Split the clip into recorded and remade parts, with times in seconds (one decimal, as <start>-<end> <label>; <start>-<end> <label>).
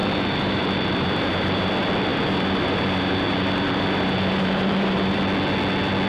0.0-1.7 remade; 1.7-2.1 recorded; 2.1-5.2 remade; 5.2-6.1 recorded